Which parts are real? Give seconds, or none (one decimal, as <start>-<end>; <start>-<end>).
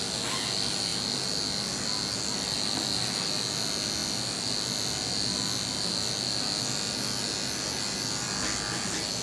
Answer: 0.0-9.2